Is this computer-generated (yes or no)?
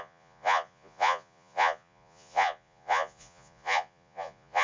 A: yes